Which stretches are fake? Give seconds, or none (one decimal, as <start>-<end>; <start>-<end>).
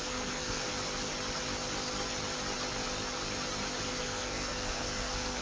0.0-0.7; 3.9-5.4